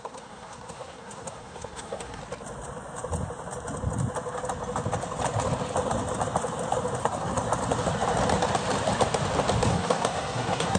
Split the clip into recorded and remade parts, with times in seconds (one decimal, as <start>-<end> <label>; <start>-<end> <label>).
0.0-2.2 remade; 2.2-7.0 recorded; 7.0-7.4 remade; 7.4-9.7 recorded; 9.7-10.8 remade